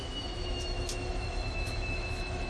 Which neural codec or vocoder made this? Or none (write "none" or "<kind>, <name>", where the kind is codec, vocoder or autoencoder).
autoencoder, DAC-VAE